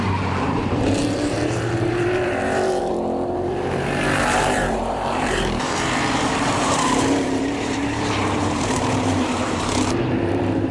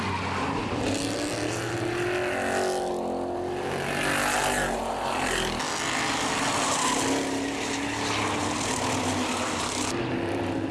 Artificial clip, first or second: first